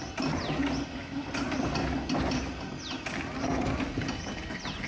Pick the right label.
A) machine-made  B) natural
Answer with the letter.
B